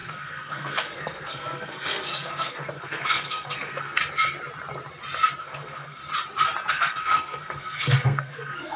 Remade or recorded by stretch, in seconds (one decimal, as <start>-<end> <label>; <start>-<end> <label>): 0.0-4.0 remade; 4.0-5.4 recorded; 5.4-6.0 remade; 6.0-6.7 recorded; 6.7-8.8 remade